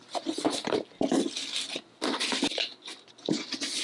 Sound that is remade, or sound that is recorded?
recorded